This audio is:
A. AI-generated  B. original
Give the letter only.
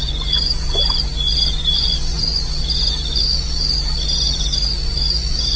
A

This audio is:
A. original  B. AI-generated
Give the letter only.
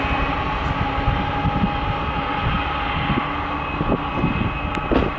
A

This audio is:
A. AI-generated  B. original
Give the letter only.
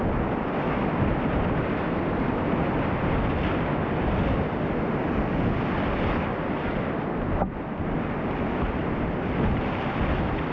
B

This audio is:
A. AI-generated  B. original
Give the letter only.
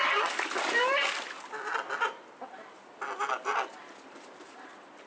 B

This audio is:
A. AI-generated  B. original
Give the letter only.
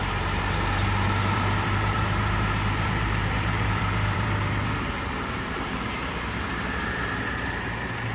A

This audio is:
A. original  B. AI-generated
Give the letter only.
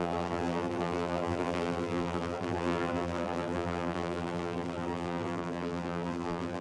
B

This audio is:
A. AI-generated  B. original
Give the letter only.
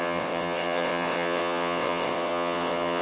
A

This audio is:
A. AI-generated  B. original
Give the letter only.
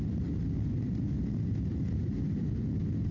B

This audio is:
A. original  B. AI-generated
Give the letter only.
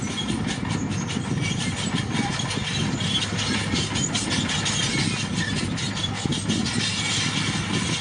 A